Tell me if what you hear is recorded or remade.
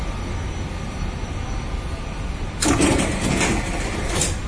recorded